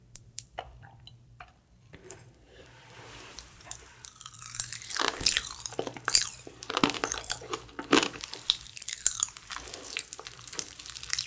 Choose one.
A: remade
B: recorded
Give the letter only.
A